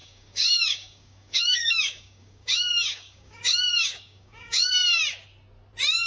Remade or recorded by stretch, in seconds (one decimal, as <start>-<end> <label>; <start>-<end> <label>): 0.0-5.0 remade; 5.0-6.1 recorded